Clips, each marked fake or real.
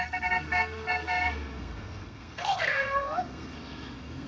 fake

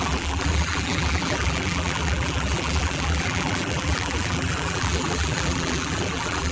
fake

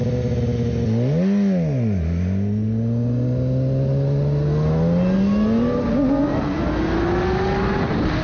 real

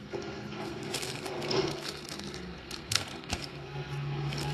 fake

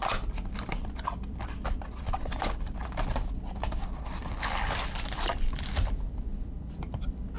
fake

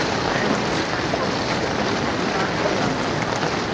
real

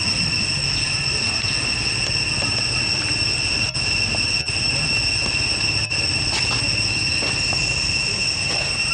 real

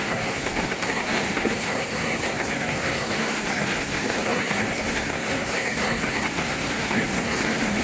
fake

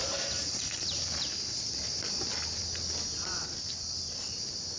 real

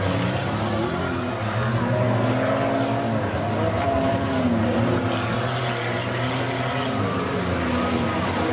real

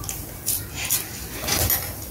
real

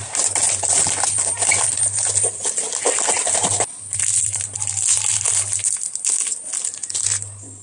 real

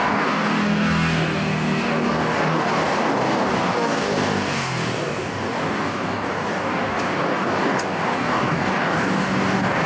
fake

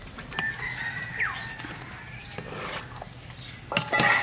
real